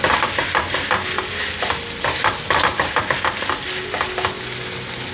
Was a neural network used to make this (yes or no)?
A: no